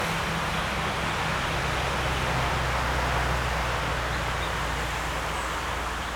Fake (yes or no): no